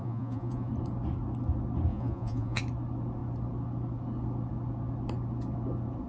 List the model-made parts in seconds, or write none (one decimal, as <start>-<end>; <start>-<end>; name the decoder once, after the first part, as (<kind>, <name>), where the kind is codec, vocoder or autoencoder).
0.0-0.7 (vocoder, Vocos); 1.9-2.6